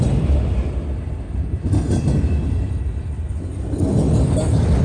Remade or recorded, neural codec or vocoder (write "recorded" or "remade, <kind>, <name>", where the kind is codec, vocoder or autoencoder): recorded